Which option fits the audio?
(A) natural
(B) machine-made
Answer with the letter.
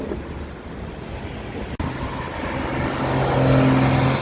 A